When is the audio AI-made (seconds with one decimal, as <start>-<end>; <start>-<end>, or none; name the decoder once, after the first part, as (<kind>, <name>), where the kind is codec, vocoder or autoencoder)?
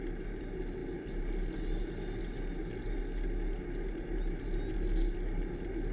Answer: none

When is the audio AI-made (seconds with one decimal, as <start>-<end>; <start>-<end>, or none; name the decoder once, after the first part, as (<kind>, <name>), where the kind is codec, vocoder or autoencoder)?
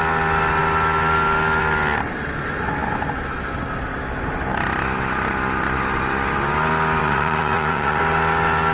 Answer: 7.0-8.0 (vocoder, Vocos)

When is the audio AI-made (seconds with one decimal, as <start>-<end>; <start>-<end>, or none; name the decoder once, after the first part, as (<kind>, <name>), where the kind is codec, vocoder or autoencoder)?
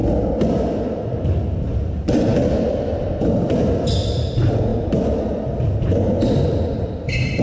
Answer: none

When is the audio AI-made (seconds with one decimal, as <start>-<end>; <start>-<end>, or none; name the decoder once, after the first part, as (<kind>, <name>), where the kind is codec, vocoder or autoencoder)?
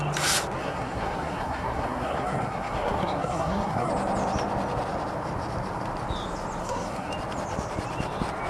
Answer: 0.6-3.9 (codec, SNAC); 6.6-7.1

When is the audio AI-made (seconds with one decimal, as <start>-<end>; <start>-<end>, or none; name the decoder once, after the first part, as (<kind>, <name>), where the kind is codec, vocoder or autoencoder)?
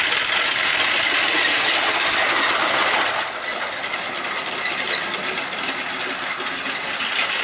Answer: none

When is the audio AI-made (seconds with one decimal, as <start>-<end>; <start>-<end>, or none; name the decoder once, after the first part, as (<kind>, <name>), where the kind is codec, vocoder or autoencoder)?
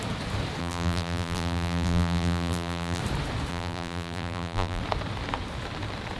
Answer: 0.6-3.0 (vocoder, BigVGAN v2); 3.5-4.8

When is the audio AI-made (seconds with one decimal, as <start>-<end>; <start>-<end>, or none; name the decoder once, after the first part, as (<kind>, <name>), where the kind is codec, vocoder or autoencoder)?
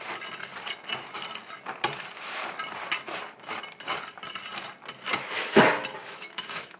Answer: 5.1-5.6 (autoencoder, DAC-VAE); 6.0-6.8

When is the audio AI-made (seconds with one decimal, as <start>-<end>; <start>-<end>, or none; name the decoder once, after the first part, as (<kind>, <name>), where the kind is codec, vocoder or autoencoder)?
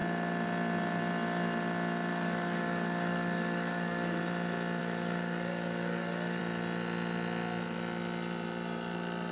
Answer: 2.1-4.2 (codec, DAC); 4.8-6.4